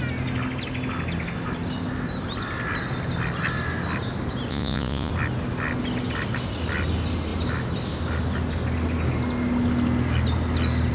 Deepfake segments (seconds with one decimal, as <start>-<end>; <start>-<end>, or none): 4.5-5.1